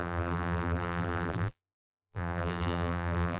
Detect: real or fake fake